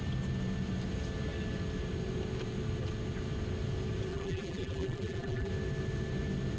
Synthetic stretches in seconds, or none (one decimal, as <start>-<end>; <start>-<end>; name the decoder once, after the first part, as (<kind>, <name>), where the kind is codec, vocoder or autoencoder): 4.1-5.5 (vocoder, BigVGAN v2)